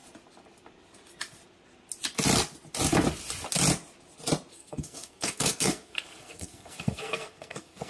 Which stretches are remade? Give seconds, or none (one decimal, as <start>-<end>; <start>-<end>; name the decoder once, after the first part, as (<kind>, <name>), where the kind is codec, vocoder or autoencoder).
4.5-7.9 (codec, SNAC)